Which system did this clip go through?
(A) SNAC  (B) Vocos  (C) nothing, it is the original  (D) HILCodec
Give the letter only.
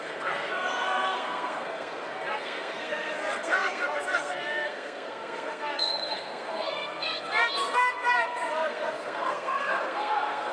A